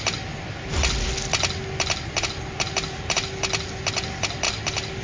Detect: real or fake real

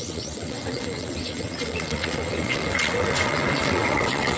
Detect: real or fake fake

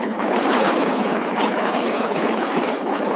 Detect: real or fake fake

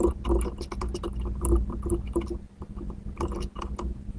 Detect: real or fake real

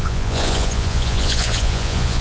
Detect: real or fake fake